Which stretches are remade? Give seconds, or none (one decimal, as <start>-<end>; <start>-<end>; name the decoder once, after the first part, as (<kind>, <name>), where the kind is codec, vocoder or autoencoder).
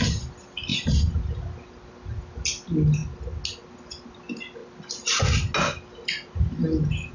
none